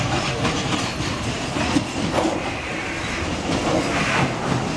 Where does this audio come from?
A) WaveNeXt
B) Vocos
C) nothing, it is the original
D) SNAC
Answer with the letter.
C